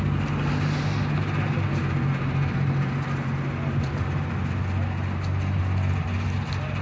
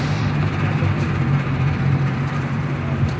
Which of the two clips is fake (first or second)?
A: second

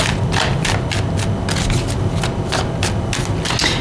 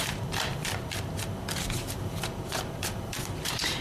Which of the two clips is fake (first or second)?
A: second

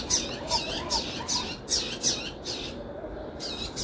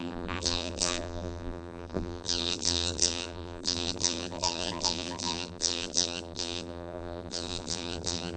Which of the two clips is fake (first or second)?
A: second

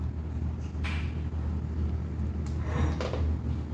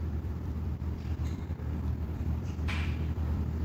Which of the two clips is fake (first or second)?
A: second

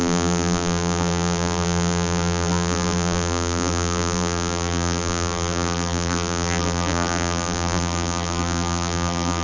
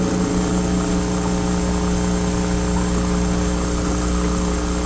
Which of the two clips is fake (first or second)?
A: first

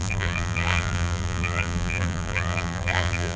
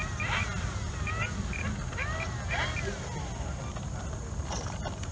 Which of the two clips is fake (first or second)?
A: first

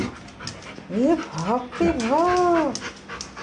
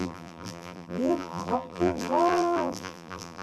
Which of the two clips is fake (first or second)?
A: second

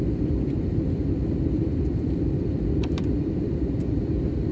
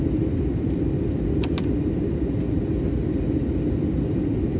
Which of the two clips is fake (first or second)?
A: first